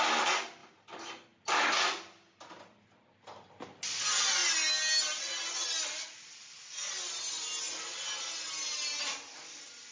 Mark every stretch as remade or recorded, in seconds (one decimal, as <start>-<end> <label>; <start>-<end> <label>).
0.0-9.9 recorded